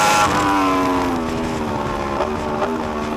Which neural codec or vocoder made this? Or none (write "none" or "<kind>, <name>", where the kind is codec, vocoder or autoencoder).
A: none